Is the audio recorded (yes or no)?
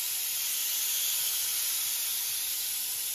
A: yes